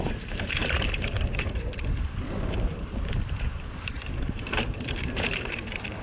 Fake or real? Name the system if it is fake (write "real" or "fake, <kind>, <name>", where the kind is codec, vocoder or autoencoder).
fake, vocoder, BigVGAN v2